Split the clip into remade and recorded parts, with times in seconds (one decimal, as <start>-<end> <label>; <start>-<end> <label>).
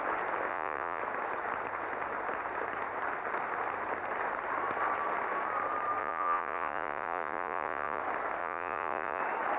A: 0.0-0.5 recorded; 0.5-1.0 remade; 1.0-6.0 recorded; 6.0-8.0 remade; 8.0-8.4 recorded; 8.4-9.2 remade; 9.2-9.6 recorded